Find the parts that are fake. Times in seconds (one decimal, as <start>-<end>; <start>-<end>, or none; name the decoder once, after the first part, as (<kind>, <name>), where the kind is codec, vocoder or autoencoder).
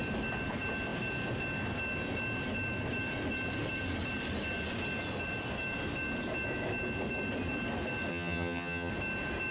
8.1-8.9 (vocoder, HiFi-GAN)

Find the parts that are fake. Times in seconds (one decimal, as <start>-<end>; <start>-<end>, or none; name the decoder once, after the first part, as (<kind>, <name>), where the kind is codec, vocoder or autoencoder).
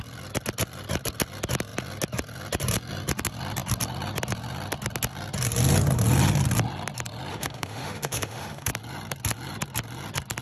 7.3-8.7 (autoencoder, DAC-VAE)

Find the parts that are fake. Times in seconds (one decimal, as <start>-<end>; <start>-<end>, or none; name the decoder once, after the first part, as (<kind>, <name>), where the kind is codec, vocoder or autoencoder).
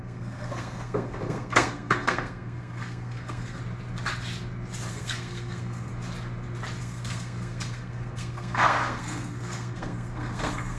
0.0-3.6 (codec, SNAC); 4.9-5.9; 6.8-10.8